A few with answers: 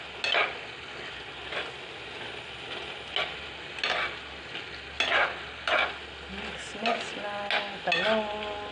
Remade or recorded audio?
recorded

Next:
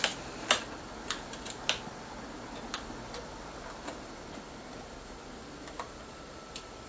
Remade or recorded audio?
recorded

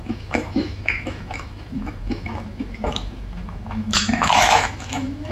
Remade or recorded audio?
remade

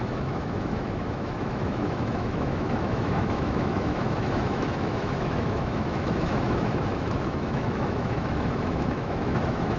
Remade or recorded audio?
remade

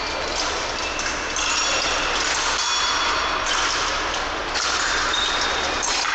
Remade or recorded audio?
recorded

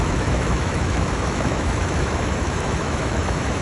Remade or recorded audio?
remade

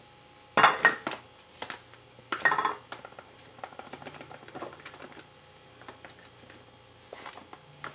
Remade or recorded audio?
recorded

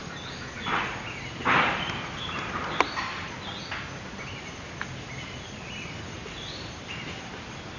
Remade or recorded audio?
recorded